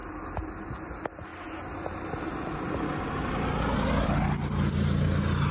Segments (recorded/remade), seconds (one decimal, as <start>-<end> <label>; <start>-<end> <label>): 0.0-5.5 recorded